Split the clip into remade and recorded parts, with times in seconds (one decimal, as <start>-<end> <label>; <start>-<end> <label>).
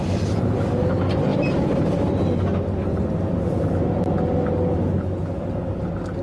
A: 0.0-6.2 recorded